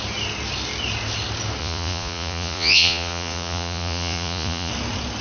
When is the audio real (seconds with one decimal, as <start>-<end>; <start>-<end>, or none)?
0.0-1.6; 4.7-5.2